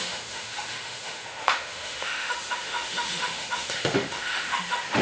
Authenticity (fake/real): fake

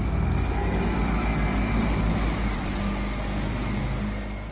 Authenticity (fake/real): real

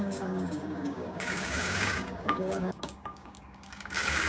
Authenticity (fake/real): fake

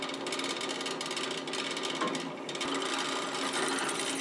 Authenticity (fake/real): real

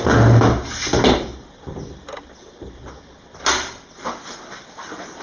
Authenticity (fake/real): real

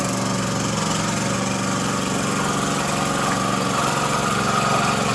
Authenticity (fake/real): real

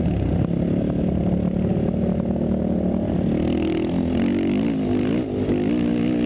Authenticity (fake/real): real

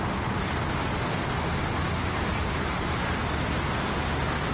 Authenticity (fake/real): real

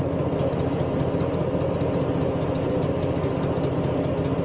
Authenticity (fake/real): real